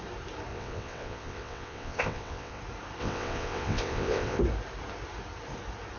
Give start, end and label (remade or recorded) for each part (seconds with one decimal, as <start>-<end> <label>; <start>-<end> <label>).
0.0-0.5 recorded; 0.5-2.6 remade; 2.6-3.0 recorded; 3.0-4.4 remade; 4.4-6.0 recorded